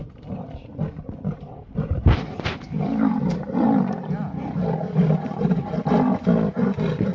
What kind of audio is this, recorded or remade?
recorded